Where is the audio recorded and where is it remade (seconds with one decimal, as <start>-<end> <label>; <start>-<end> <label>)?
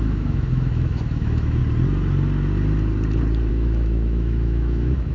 0.0-1.6 remade; 1.6-3.5 recorded; 3.5-5.1 remade